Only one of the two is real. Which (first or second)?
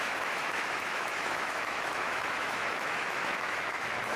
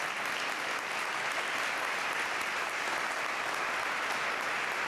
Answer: second